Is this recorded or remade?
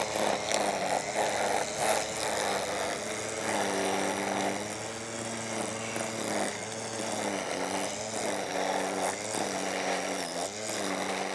recorded